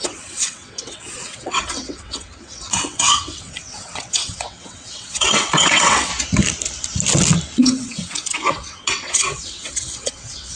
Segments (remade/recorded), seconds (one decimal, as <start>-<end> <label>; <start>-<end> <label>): 0.0-6.1 remade; 6.1-7.6 recorded; 7.6-10.6 remade